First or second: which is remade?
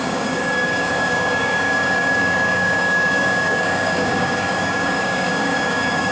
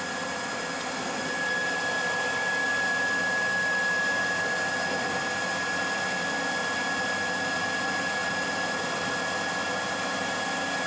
first